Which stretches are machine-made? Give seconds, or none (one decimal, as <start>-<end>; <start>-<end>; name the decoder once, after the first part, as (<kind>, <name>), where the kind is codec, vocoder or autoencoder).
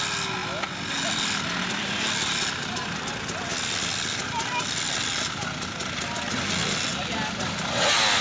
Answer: none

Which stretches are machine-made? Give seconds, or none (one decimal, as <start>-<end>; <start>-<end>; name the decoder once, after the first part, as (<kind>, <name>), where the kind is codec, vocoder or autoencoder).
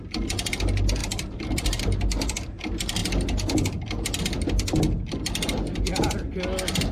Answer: 1.0-1.8 (vocoder, BigVGAN v2)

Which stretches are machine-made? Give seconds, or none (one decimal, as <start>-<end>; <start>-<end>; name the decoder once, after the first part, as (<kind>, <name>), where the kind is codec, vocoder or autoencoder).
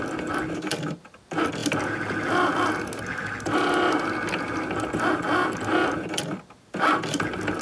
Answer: none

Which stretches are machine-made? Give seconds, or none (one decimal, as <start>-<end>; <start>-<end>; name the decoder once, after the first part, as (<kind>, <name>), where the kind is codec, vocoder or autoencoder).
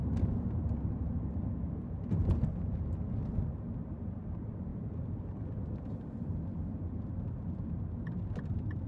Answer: 3.8-8.9 (vocoder, BigVGAN v2)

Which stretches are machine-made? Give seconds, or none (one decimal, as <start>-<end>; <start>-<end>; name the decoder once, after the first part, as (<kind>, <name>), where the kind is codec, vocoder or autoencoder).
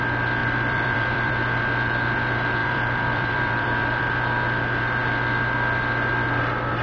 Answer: 0.4-1.4 (vocoder, BigVGAN v2); 2.6-4.0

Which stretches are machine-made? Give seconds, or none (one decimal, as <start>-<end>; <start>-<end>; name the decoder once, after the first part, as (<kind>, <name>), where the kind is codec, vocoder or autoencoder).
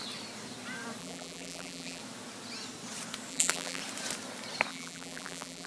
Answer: 1.0-2.0 (vocoder, BigVGAN v2); 3.3-3.8; 4.7-5.7